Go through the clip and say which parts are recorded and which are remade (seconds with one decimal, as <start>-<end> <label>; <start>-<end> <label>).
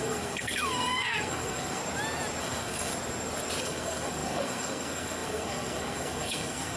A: 0.0-1.8 remade; 1.8-2.4 recorded; 2.4-2.9 remade; 2.9-3.6 recorded; 3.6-6.8 remade